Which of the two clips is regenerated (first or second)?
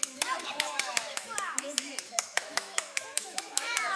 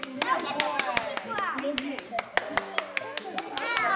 first